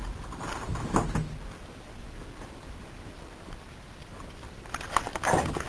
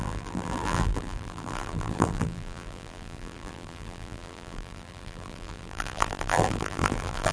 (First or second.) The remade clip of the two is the second